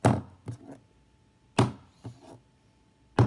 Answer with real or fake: real